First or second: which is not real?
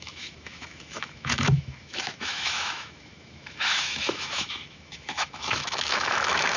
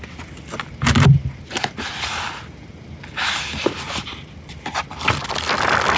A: first